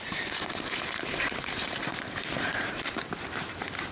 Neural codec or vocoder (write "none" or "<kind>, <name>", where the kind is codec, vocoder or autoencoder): vocoder, BigVGAN v2